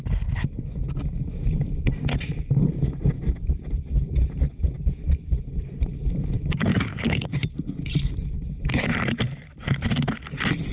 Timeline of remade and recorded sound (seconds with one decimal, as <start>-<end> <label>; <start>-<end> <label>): 0.0-6.7 recorded; 6.7-7.3 remade; 7.3-10.7 recorded